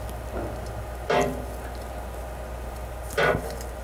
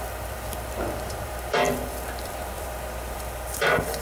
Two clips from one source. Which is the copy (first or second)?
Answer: second